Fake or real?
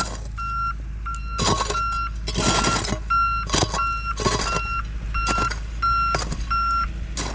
real